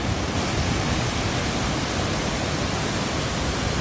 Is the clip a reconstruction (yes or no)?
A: no